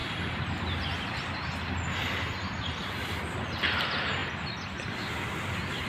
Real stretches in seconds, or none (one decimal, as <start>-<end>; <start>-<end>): 0.0-5.9